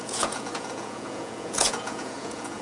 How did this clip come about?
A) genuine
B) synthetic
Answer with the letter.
B